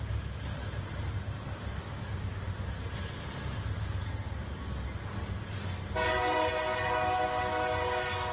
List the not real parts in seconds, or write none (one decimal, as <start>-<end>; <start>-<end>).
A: none

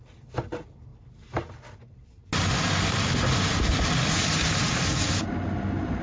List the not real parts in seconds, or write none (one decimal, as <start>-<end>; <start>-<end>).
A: none